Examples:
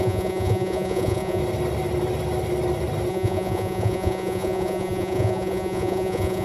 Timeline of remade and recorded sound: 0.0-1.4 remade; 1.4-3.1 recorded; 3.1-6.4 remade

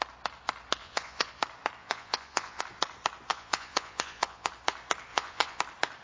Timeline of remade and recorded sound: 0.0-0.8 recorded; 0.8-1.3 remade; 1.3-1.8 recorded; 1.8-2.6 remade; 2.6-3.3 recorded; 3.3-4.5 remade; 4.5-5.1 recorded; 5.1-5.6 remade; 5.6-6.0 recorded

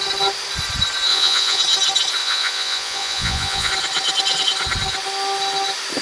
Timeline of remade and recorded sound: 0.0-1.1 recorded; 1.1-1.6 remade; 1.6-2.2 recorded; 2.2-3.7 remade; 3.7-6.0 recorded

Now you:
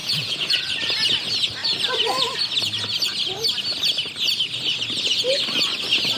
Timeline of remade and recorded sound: 0.0-0.6 remade; 0.6-6.2 recorded